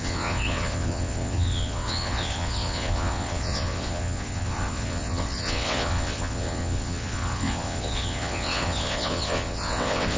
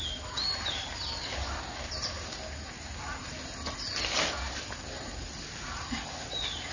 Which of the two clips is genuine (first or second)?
second